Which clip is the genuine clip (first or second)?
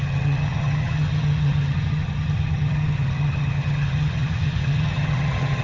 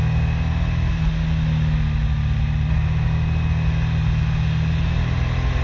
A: second